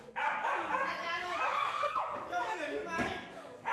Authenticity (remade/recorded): remade